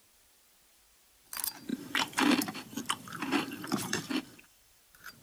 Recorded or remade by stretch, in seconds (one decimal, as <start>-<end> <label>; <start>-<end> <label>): 0.0-1.7 recorded; 1.7-4.8 remade; 4.8-5.2 recorded